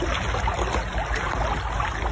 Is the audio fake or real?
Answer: real